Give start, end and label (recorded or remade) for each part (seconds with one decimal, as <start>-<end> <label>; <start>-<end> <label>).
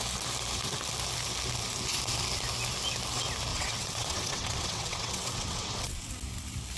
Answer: 0.0-3.5 recorded; 3.5-6.1 remade; 6.1-6.8 recorded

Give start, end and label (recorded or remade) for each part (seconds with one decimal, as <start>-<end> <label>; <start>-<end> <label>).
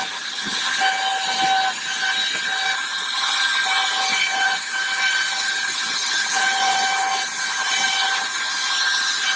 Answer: 0.0-4.1 recorded; 4.1-8.2 remade; 8.2-9.4 recorded